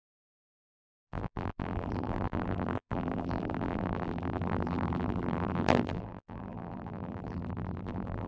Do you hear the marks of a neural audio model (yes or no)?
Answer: yes